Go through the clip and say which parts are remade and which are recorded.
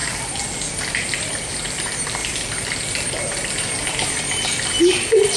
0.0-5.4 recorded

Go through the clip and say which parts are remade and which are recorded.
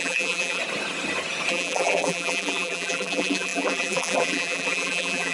0.0-0.6 remade; 0.6-1.5 recorded; 1.5-5.3 remade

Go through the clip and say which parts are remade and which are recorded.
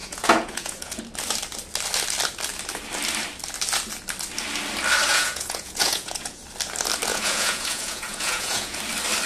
0.0-1.0 remade; 1.0-5.1 recorded; 5.1-6.4 remade; 6.4-7.1 recorded; 7.1-8.8 remade; 8.8-9.3 recorded